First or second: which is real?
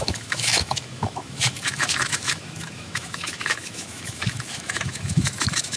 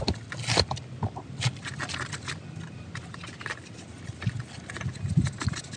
second